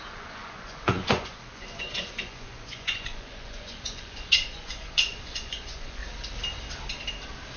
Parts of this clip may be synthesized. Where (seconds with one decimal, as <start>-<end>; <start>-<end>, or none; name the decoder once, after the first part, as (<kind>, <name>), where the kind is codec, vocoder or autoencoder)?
0.0-6.0 (vocoder, Vocos)